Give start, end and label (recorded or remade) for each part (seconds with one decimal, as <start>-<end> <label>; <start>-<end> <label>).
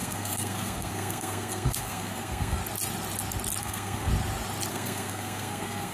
0.0-2.6 remade; 2.6-3.6 recorded; 3.6-4.1 remade; 4.1-4.7 recorded; 4.7-5.9 remade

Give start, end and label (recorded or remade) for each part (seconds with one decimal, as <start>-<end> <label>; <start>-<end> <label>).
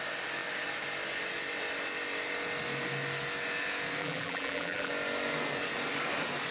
0.0-4.0 recorded; 4.0-4.9 remade; 4.9-6.5 recorded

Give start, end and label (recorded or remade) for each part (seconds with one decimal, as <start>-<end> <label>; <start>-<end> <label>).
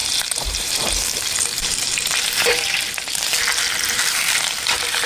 0.0-5.1 remade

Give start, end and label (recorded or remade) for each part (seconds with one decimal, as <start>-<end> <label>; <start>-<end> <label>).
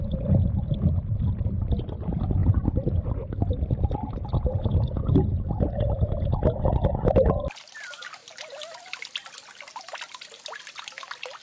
0.0-11.4 recorded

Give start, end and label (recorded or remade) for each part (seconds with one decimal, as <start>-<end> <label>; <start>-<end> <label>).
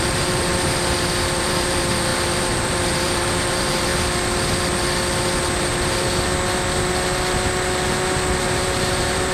0.0-0.5 remade; 0.5-1.2 recorded; 1.2-3.9 remade; 3.9-8.4 recorded; 8.4-9.3 remade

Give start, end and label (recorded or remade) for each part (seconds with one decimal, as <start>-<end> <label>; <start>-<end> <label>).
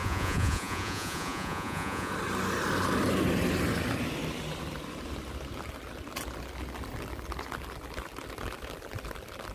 0.0-2.1 remade; 2.1-9.5 recorded